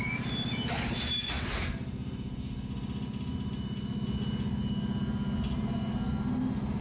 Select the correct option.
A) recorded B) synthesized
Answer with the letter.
A